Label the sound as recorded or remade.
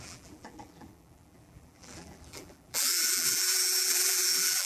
remade